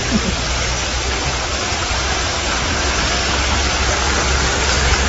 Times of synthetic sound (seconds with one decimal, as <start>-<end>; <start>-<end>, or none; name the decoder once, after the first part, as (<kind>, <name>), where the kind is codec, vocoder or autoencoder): none